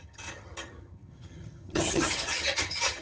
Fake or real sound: fake